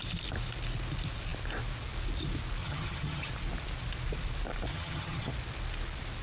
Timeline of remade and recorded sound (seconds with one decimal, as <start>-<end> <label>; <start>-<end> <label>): 0.0-2.6 recorded; 2.6-3.3 remade; 3.3-4.7 recorded; 4.7-5.3 remade; 5.3-6.2 recorded